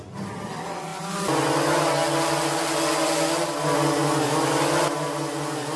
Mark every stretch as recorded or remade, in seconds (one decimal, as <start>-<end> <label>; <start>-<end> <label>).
0.0-5.8 recorded